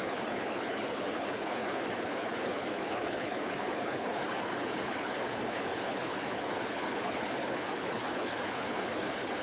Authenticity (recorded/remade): remade